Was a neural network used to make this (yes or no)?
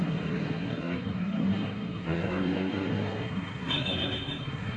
yes